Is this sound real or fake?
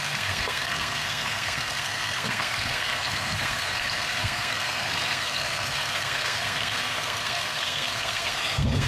fake